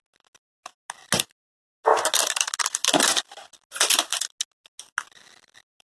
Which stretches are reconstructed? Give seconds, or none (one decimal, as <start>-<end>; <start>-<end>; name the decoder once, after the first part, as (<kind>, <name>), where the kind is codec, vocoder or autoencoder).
none